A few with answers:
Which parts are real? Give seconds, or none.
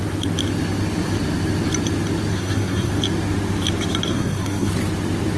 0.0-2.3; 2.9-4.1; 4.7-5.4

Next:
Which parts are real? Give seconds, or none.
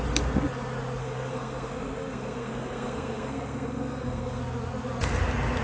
0.0-1.0; 4.4-5.6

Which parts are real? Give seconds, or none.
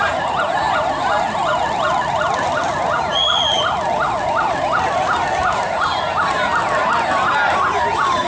0.0-8.3